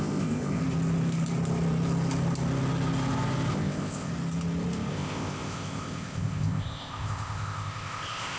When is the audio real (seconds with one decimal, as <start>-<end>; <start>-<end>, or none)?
0.6-3.5; 4.1-4.9